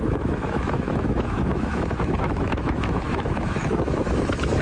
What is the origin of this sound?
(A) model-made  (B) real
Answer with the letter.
A